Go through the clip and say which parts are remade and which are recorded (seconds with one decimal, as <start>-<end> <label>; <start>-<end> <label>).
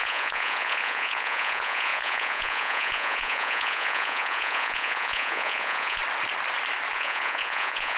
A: 0.0-6.0 remade; 6.0-6.9 recorded; 6.9-8.0 remade